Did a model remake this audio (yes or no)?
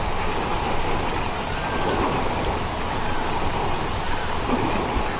no